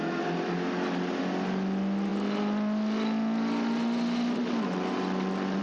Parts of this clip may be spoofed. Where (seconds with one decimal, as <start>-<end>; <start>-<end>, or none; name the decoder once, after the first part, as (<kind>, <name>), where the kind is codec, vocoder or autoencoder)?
none